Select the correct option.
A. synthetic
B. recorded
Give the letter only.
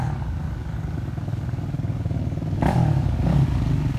A